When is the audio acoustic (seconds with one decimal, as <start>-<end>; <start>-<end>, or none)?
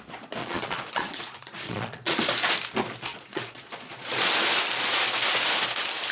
0.0-0.4; 2.2-3.1; 4.3-6.1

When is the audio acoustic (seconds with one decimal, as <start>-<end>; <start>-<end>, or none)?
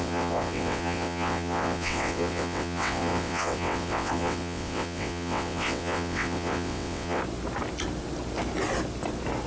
7.2-9.5